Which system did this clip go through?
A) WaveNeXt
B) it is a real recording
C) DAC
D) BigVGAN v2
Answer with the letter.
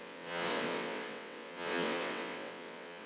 A